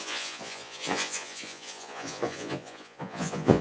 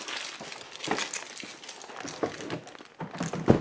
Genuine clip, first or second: second